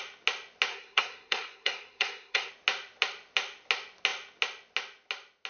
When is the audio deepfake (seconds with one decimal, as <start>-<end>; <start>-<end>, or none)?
0.7-2.5